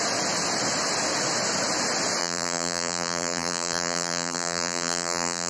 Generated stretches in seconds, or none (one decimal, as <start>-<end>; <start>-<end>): 2.2-5.5